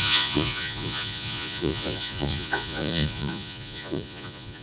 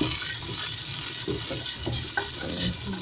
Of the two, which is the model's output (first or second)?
first